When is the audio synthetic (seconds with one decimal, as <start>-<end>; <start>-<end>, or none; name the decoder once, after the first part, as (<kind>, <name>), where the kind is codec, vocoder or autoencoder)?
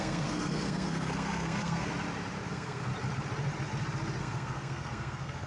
0.0-1.9 (codec, SNAC); 2.5-2.9; 4.2-5.5